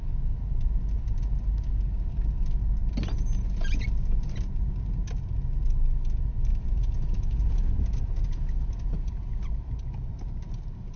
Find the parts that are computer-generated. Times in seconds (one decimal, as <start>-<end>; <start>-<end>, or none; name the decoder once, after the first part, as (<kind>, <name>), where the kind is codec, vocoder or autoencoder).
6.5-9.1 (vocoder, Vocos)